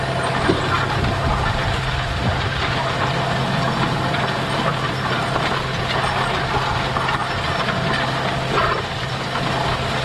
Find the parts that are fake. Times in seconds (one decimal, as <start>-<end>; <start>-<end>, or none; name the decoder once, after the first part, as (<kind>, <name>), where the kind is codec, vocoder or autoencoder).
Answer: 4.7-5.6 (vocoder, BigVGAN v2)